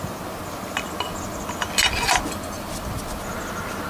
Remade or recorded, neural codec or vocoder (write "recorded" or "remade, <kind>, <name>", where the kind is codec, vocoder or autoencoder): recorded